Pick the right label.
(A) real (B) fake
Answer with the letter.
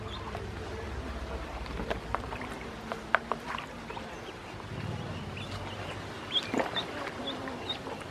A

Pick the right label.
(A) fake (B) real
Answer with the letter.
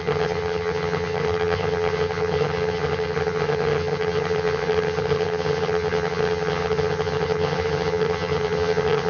A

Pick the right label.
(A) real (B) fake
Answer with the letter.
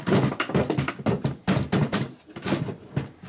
A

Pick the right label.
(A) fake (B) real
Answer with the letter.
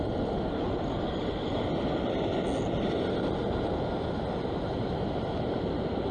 B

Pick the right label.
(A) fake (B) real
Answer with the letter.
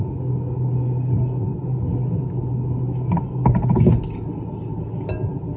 B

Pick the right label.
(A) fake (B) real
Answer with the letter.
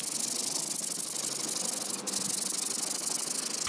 B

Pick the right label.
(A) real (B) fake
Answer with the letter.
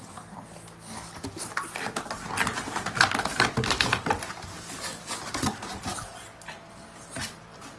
A